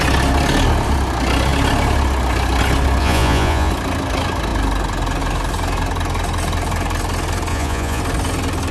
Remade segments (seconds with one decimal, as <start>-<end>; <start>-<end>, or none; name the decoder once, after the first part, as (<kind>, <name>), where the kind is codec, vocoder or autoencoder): 3.0-3.7 (vocoder, Vocos); 7.5-8.0